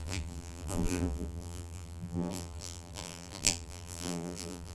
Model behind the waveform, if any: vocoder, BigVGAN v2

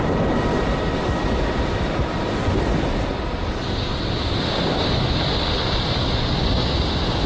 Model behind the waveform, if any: none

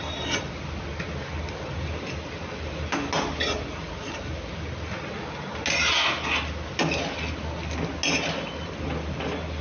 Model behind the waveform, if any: none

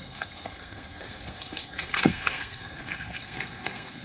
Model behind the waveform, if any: codec, SNAC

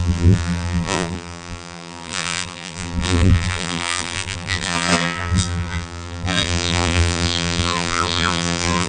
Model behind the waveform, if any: vocoder, BigVGAN v2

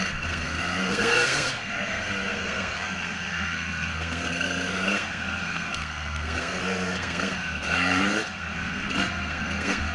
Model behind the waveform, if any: codec, SNAC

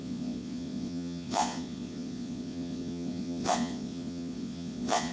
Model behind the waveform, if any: vocoder, Vocos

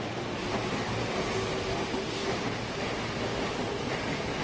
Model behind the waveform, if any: none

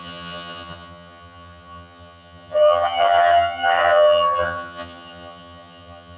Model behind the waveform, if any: vocoder, HiFi-GAN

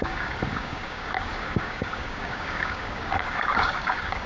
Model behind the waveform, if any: codec, DAC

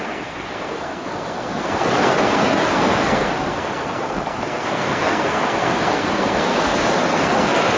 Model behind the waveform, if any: codec, SNAC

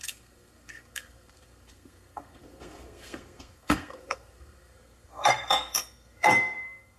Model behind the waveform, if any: codec, SNAC